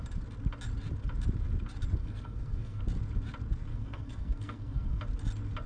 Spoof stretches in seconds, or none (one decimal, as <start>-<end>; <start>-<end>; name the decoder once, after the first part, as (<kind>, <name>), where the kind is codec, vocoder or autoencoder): 2.0-2.8 (codec, SNAC); 3.7-5.0